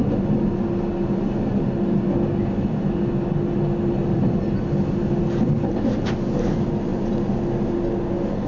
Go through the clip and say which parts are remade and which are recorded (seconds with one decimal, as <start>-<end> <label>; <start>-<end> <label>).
0.0-8.5 recorded